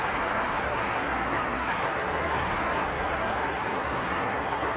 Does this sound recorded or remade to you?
remade